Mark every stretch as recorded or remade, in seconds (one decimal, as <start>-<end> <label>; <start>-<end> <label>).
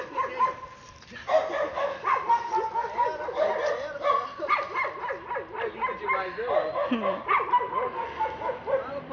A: 0.0-9.1 recorded